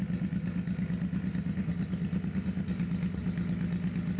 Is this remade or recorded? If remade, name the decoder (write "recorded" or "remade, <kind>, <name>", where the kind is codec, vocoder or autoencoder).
recorded